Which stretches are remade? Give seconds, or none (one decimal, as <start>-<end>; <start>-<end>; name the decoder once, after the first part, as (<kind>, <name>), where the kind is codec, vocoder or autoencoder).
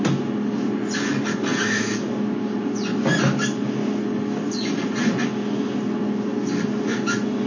none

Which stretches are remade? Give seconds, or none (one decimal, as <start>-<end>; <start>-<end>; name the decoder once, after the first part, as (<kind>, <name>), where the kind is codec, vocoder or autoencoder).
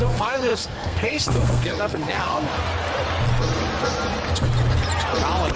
0.0-2.5 (codec, SNAC)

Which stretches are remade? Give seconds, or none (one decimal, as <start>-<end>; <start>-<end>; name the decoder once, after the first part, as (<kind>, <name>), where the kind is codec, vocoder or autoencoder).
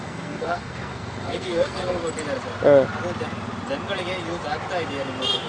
0.0-2.0 (codec, SNAC)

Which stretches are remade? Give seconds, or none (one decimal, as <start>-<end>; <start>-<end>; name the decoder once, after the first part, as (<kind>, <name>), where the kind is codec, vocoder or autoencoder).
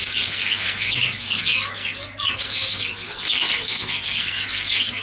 0.0-5.0 (codec, SNAC)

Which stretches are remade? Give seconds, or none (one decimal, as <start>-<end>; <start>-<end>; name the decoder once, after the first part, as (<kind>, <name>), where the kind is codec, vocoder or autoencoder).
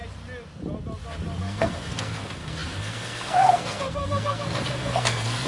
1.4-5.5 (codec, SNAC)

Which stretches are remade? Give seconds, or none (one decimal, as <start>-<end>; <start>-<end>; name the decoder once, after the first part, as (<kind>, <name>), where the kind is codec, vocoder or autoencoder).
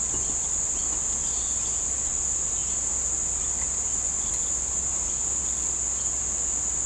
none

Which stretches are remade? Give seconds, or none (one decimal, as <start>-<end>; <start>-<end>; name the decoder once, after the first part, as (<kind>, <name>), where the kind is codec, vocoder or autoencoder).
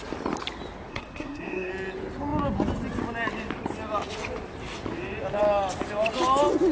0.9-1.7 (codec, SNAC)